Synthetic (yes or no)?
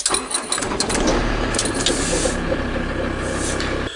no